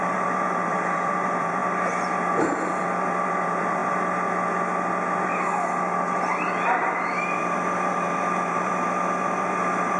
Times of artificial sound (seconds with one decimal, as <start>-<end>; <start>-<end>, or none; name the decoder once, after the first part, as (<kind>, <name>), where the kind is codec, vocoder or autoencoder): 0.0-1.6 (vocoder, BigVGAN v2); 2.2-3.8; 7.2-10.0